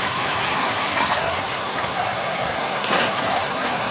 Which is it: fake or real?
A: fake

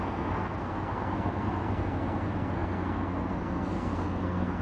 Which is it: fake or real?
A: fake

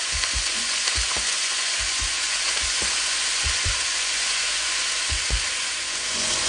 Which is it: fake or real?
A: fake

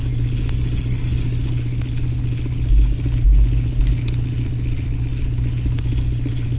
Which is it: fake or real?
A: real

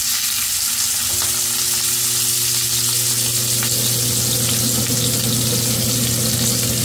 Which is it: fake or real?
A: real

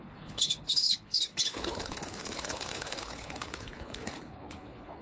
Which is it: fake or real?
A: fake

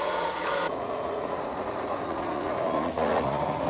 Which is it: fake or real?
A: fake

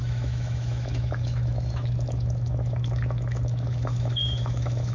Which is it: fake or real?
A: fake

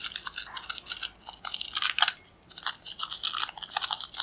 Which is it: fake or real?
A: real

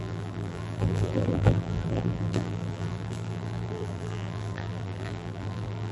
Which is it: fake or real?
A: fake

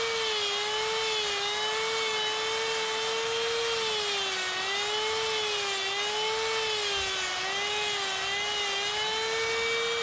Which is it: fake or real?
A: real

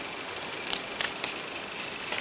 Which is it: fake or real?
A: real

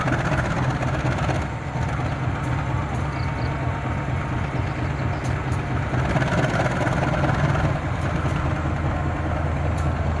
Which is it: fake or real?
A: real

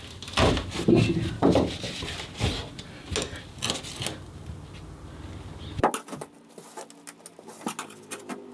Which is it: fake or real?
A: real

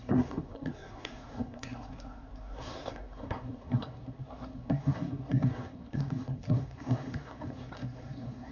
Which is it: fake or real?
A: fake